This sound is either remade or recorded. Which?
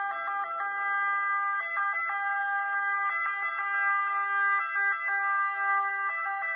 recorded